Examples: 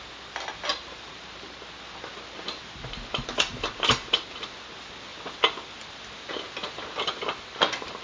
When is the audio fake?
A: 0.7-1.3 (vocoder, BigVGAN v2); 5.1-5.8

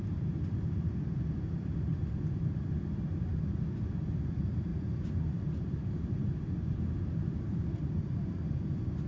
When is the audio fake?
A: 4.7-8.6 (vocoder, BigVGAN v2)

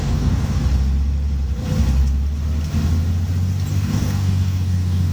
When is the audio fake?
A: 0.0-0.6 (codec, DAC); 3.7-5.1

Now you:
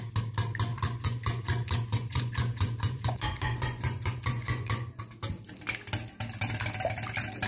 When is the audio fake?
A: 0.7-5.0 (vocoder, Vocos)

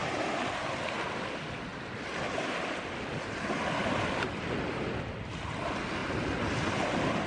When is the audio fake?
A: none

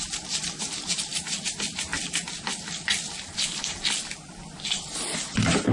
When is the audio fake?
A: none

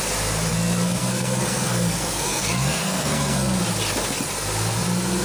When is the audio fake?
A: 0.5-3.6 (codec, SNAC)

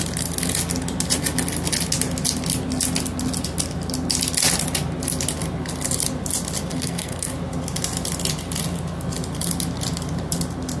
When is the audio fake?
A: 6.7-7.3 (codec, SNAC)